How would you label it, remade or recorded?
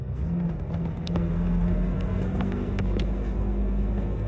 remade